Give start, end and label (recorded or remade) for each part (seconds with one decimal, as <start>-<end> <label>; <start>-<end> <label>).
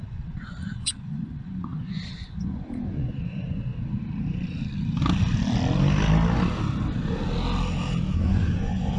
0.0-3.7 remade; 3.7-8.2 recorded; 8.2-9.0 remade